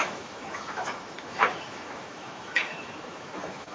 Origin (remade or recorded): remade